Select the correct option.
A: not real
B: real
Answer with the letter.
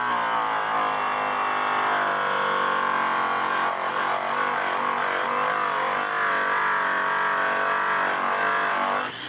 B